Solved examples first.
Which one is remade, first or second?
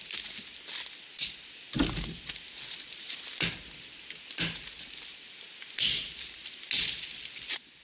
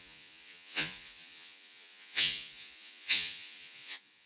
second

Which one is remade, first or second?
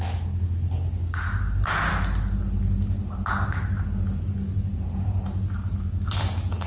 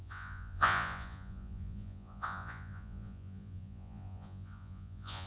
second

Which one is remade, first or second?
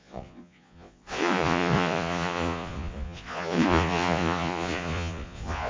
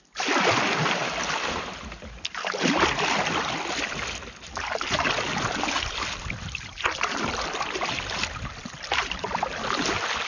first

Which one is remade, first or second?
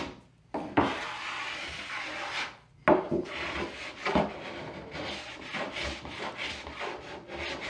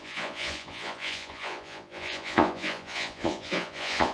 second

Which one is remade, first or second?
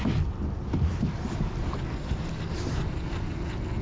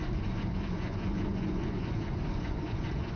second